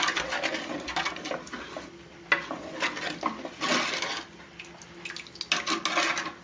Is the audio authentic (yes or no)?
yes